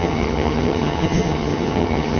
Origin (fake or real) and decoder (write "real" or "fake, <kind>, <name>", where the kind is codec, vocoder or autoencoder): fake, vocoder, HiFi-GAN